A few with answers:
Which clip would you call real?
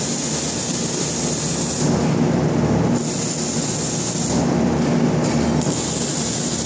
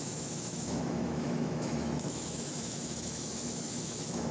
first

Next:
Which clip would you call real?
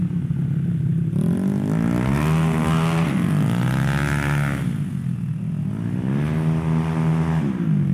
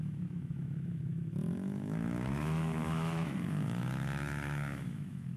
first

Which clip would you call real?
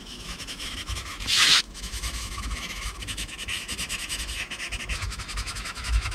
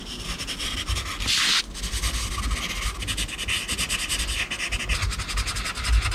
second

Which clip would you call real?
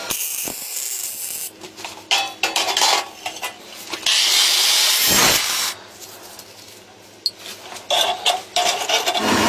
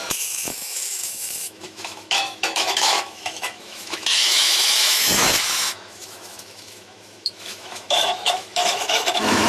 first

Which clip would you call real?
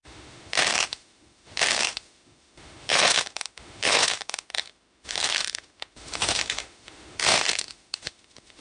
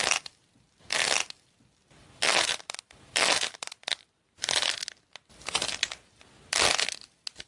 second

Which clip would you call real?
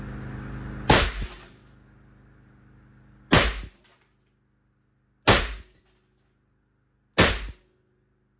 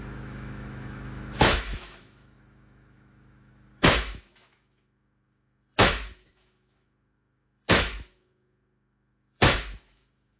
first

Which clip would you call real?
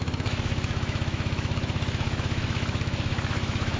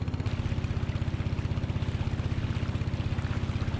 second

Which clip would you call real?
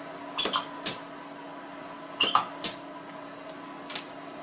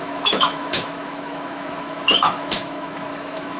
first